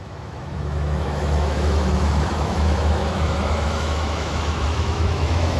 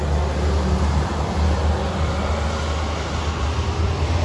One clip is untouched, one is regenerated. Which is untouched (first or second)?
second